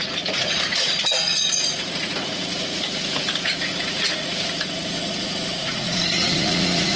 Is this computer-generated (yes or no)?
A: yes